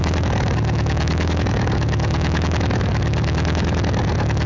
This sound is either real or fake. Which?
fake